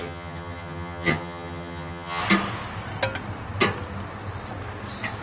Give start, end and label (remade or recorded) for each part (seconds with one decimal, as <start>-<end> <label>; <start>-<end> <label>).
0.0-2.2 remade; 2.2-5.2 recorded